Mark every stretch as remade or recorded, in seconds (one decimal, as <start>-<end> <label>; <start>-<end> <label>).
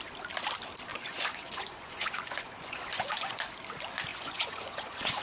0.0-0.9 recorded; 0.9-3.4 remade; 3.4-4.1 recorded; 4.1-5.2 remade